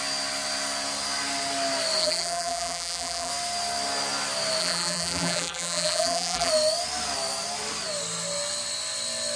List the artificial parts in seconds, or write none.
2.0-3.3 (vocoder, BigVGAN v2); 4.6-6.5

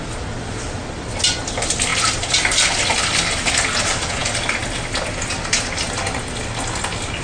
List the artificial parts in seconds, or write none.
none

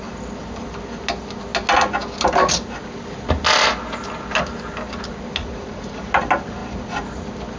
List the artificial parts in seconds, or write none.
5.4-6.1 (vocoder, Vocos)

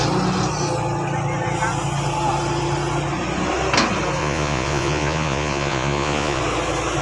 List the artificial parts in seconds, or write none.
4.2-6.4 (vocoder, Vocos)

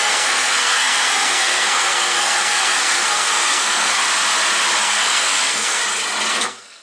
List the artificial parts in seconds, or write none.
0.0-4.0 (codec, SNAC); 4.8-5.8; 6.3-6.8

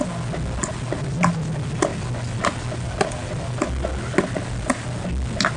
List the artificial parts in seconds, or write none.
none

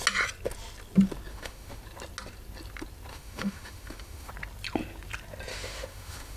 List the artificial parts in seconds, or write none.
1.3-1.8 (autoencoder, DAC-VAE); 3.1-4.3; 5.5-6.4

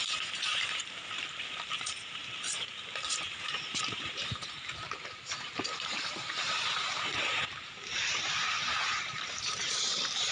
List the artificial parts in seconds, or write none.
0.0-2.2 (vocoder, BigVGAN v2); 3.0-10.3